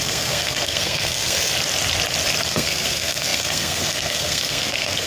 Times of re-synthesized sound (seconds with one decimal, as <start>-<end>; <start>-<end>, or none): 0.0-1.5; 2.5-5.1